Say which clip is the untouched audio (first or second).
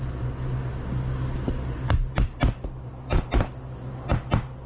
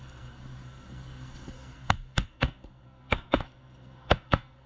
first